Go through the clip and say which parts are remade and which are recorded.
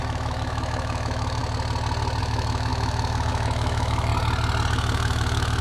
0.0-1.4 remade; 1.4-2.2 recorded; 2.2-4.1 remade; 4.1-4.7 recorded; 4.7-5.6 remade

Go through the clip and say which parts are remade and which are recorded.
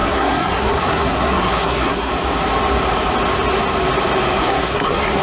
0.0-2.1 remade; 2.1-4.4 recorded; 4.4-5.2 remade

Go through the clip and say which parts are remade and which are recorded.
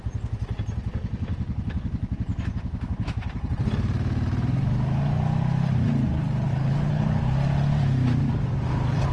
0.0-6.5 recorded; 6.5-7.2 remade; 7.2-9.1 recorded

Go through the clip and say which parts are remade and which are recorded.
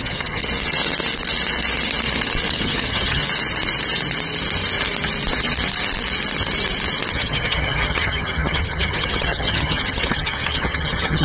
0.0-0.4 remade; 0.4-2.5 recorded; 2.5-3.2 remade; 3.2-7.1 recorded; 7.1-11.2 remade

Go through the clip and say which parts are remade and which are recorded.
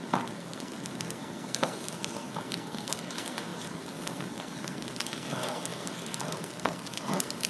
0.0-7.5 remade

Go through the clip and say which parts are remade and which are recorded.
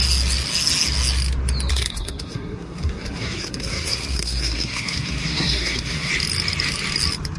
0.0-1.7 recorded; 1.7-6.1 remade; 6.1-7.4 recorded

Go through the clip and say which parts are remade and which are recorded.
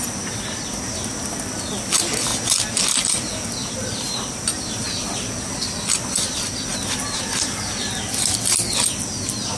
0.0-9.6 recorded